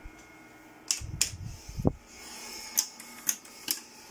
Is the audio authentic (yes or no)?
yes